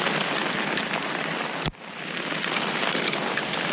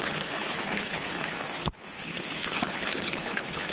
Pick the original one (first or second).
first